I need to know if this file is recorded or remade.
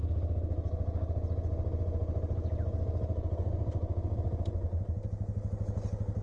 recorded